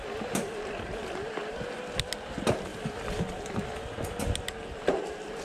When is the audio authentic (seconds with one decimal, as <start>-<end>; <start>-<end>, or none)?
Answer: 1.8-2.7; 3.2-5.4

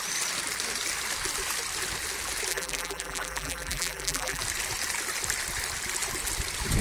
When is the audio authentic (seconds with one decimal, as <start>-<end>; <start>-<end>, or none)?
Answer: 0.0-2.5; 4.4-6.8

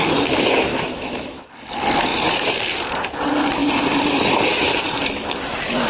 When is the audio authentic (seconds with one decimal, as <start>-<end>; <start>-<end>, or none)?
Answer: 0.0-0.7; 1.5-5.9